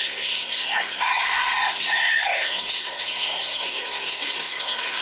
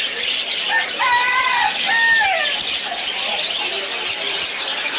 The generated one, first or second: first